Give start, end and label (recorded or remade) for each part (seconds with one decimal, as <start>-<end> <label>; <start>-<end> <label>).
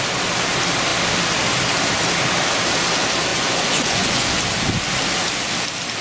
0.0-3.3 recorded; 3.3-4.4 remade; 4.4-6.0 recorded